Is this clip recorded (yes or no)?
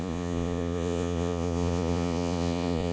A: no